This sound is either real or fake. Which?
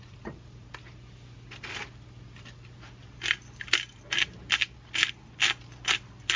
real